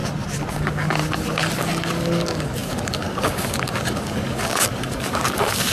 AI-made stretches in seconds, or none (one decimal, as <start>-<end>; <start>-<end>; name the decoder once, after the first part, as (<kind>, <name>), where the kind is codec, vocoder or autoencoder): 0.5-1.0 (codec, DAC); 1.6-5.7